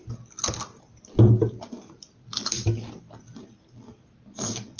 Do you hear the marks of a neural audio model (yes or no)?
no